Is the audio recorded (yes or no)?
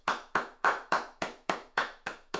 no